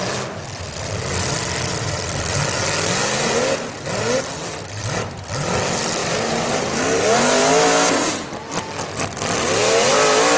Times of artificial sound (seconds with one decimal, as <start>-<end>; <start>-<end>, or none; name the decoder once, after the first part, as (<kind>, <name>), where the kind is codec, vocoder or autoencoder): 6.0-7.0 (vocoder, BigVGAN v2)

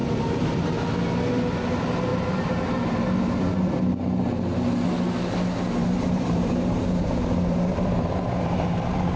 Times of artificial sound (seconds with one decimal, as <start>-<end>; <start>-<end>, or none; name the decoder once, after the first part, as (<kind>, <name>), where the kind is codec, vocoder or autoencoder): 0.0-0.8 (vocoder, BigVGAN v2); 2.1-2.9; 5.8-9.2

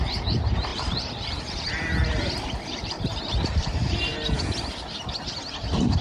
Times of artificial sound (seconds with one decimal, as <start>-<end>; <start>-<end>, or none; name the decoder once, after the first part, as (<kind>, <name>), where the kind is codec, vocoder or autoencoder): 0.0-4.1 (vocoder, BigVGAN v2); 5.5-6.0